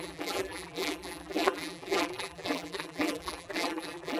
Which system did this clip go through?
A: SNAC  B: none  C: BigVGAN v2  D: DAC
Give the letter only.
C